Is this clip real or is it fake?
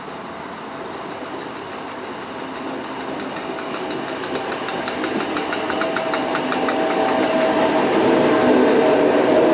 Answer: real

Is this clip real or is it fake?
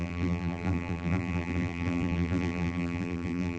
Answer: fake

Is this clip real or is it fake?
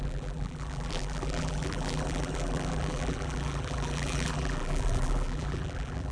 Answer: fake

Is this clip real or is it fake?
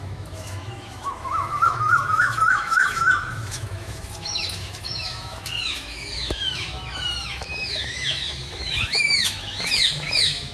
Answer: fake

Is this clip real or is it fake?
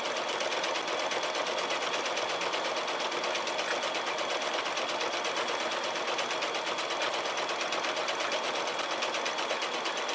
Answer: real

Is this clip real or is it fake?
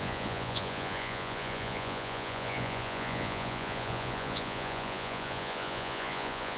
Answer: fake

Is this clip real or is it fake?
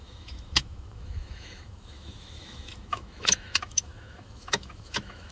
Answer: fake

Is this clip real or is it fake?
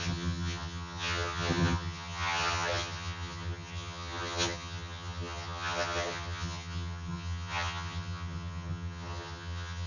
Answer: fake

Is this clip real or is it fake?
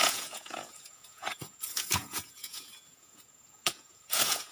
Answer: fake